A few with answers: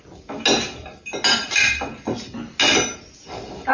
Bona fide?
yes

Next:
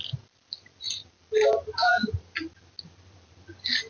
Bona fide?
yes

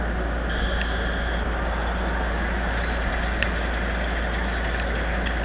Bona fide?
yes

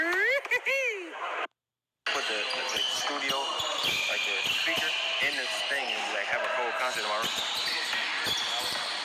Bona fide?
yes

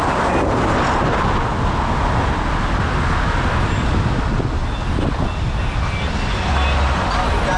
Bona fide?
yes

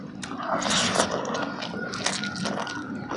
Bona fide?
yes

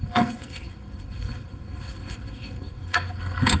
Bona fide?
no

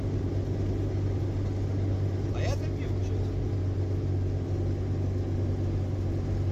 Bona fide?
yes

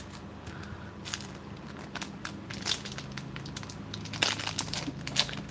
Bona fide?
yes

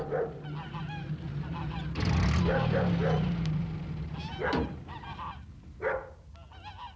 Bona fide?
yes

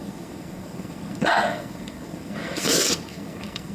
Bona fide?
no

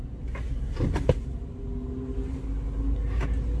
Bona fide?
yes